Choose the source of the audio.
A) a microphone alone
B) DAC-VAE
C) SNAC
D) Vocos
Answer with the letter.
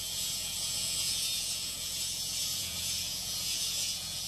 D